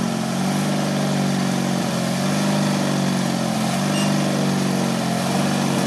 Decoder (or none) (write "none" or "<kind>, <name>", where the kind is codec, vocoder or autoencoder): none